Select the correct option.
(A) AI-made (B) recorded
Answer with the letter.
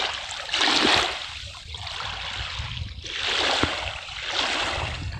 B